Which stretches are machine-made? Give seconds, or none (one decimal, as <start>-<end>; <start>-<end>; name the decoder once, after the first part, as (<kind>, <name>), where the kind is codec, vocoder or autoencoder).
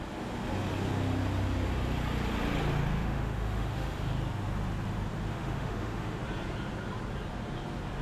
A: 2.9-4.0 (autoencoder, DAC-VAE); 5.3-6.2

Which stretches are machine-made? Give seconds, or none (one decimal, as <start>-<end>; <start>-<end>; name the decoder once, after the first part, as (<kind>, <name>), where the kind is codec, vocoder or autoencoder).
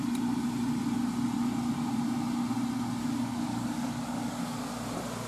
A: 3.0-4.6 (codec, DAC)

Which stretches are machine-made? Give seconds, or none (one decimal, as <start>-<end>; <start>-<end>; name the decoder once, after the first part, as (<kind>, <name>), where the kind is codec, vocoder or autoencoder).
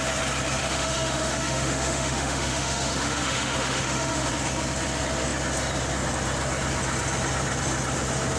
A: 0.6-4.3 (autoencoder, DAC-VAE)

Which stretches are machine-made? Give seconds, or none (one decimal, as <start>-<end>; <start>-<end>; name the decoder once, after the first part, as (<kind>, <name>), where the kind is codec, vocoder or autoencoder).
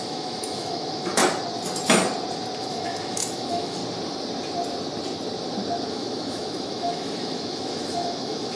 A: 0.0-1.2 (autoencoder, DAC-VAE); 2.6-3.8; 5.9-8.6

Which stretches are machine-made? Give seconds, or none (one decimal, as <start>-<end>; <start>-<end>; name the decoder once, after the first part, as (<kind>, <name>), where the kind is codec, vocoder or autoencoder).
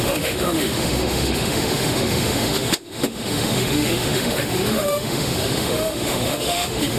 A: 0.0-7.0 (autoencoder, DAC-VAE)